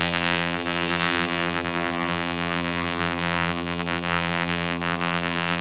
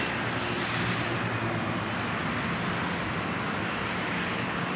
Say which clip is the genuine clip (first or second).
second